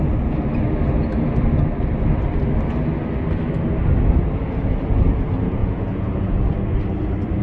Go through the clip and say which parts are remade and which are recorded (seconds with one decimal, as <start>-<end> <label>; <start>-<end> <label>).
0.0-5.6 recorded; 5.6-6.2 remade; 6.2-7.4 recorded